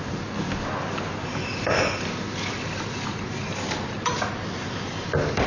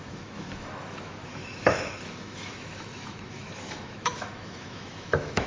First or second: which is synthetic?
second